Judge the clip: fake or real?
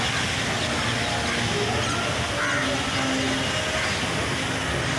real